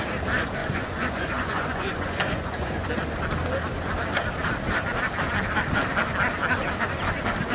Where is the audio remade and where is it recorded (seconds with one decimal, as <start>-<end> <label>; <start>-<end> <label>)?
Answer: 0.0-0.6 recorded; 0.6-2.9 remade; 2.9-7.5 recorded